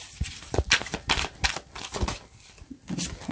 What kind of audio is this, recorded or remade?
remade